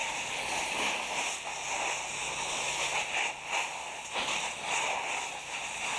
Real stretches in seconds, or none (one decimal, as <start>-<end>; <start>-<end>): 0.0-6.0